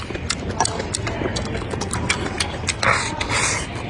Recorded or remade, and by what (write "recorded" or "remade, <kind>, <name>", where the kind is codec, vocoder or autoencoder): recorded